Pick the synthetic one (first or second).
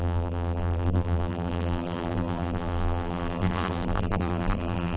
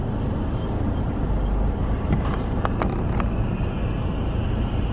first